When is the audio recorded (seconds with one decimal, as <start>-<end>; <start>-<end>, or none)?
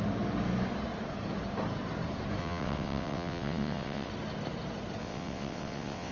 0.0-2.4; 4.1-5.0